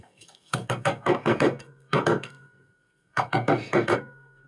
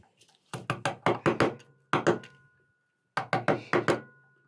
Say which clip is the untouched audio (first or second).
second